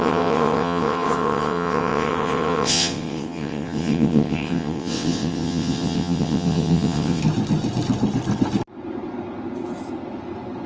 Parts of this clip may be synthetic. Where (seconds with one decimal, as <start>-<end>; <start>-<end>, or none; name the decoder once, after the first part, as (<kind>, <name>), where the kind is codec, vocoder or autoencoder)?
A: 0.0-7.2 (vocoder, WaveNeXt)